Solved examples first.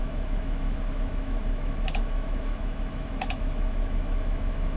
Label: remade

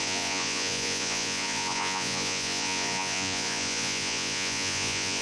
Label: remade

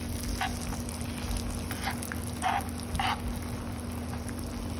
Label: recorded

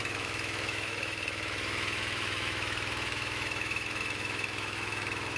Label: remade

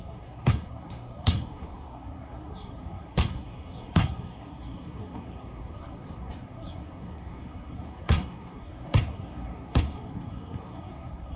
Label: remade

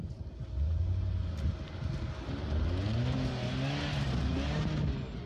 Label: recorded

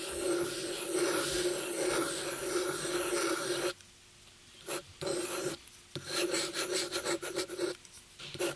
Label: recorded